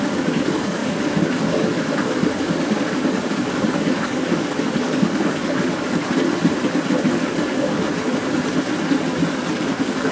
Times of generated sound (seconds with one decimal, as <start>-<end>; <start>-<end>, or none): 0.0-6.1; 7.1-7.9; 9.5-10.1